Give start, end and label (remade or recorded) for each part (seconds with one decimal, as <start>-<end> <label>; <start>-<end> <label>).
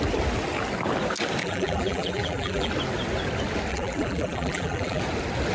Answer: 0.0-1.4 recorded; 1.4-2.7 remade; 2.7-3.7 recorded; 3.7-5.0 remade; 5.0-5.5 recorded